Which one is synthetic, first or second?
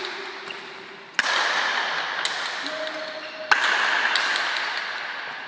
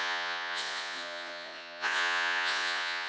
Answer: second